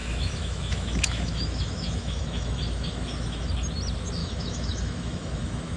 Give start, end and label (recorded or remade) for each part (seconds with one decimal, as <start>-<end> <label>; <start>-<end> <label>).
0.0-3.5 remade; 3.5-4.2 recorded; 4.2-5.8 remade